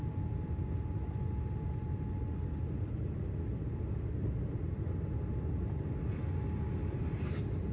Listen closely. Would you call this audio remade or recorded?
recorded